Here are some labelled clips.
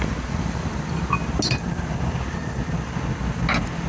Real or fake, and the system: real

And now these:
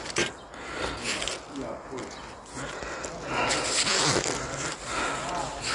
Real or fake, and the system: real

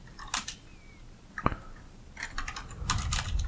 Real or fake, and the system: real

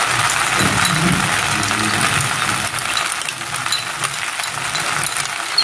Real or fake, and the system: real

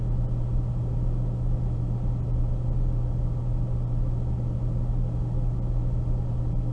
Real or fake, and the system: real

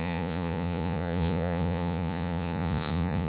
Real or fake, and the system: fake, vocoder, Vocos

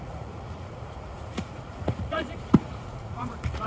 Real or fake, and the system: fake, vocoder, Vocos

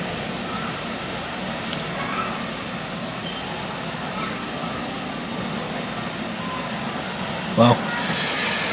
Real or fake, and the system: real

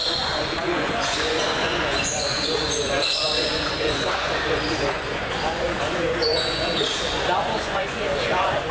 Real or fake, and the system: fake, vocoder, Vocos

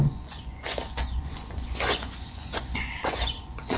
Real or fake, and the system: fake, vocoder, Vocos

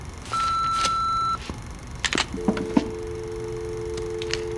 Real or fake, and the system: real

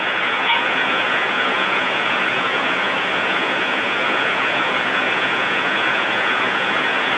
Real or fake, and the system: fake, vocoder, Vocos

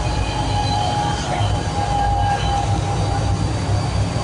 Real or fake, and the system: real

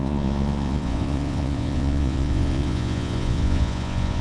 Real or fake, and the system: fake, vocoder, Vocos